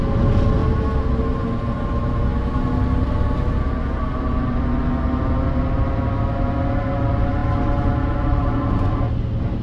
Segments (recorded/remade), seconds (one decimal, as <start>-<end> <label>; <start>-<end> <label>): 0.0-9.6 recorded